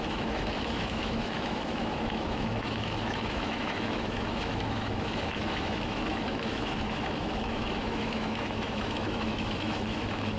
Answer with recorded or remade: remade